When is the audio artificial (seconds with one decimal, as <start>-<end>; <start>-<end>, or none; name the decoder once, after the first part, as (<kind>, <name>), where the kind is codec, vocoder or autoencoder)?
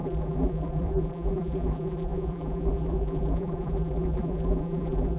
0.0-5.2 (vocoder, BigVGAN v2)